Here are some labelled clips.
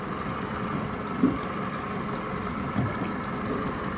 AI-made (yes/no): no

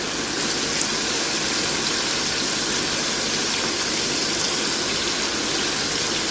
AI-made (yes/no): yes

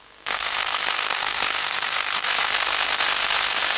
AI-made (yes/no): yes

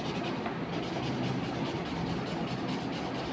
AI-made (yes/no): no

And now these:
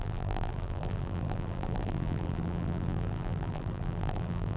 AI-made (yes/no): yes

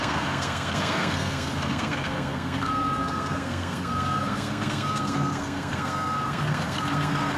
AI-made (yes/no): yes